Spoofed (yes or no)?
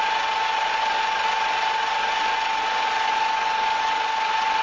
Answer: no